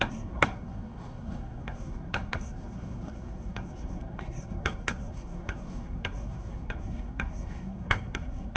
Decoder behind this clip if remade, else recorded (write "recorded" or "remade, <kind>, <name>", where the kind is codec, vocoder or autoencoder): remade, codec, SNAC